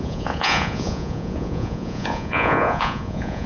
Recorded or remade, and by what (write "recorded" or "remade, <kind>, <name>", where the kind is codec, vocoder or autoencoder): remade, vocoder, Vocos